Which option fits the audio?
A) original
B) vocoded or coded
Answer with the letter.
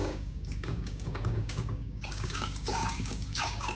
B